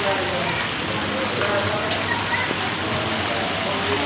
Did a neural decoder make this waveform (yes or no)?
no